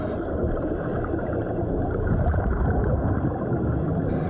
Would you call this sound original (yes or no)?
yes